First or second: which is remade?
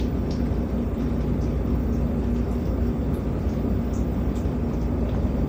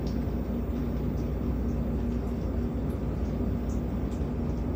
first